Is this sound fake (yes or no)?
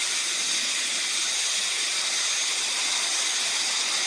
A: no